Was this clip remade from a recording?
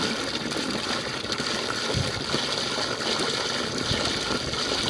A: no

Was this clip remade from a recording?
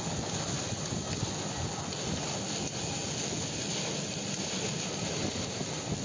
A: no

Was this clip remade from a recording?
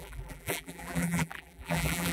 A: yes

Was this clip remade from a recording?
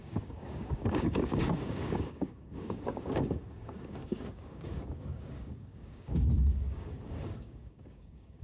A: yes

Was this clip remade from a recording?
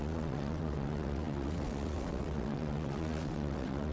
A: yes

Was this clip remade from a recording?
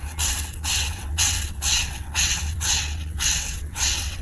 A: yes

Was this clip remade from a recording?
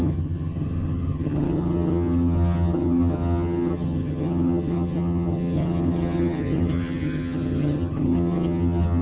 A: yes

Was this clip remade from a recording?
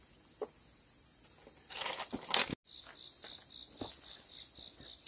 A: no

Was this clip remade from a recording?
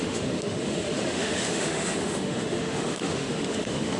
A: yes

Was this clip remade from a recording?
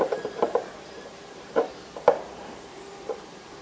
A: yes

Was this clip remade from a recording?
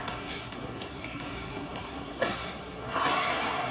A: yes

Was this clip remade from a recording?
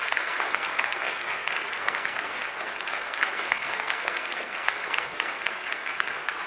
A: yes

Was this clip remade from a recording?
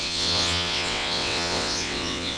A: yes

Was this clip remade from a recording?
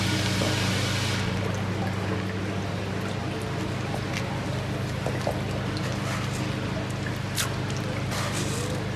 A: no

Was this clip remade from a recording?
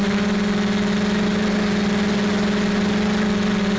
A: no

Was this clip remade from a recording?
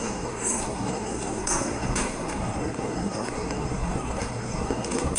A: yes